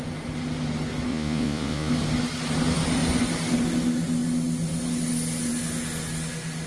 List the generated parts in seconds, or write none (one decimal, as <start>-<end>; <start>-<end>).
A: 1.1-1.9